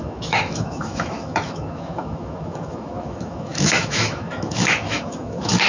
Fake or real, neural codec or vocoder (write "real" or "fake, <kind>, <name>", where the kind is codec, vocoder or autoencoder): fake, autoencoder, DAC-VAE